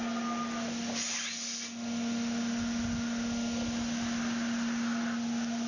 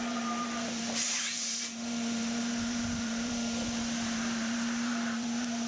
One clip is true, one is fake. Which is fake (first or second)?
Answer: second